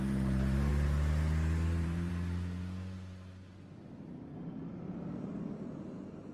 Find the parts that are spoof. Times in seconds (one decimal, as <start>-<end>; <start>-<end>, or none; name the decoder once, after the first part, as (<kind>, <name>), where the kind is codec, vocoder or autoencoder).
0.7-2.1 (vocoder, BigVGAN v2)